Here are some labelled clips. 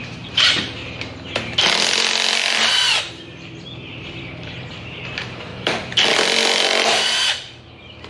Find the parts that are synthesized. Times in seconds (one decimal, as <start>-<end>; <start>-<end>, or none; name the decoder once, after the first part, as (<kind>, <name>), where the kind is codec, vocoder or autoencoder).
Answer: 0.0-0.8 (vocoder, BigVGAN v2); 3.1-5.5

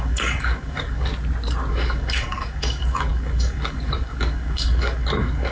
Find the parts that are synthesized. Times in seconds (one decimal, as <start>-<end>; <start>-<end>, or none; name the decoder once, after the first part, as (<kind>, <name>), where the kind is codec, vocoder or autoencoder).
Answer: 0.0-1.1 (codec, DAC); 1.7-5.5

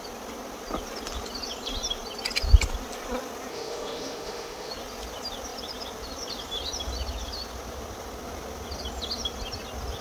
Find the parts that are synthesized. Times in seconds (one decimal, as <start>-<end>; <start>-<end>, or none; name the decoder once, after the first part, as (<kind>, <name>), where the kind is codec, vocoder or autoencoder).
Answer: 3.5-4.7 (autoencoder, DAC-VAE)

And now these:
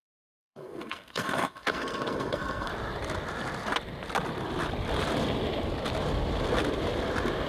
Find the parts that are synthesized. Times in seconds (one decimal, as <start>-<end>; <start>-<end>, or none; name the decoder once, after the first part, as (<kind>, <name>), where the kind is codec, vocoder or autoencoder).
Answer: 0.0-2.7 (codec, SNAC)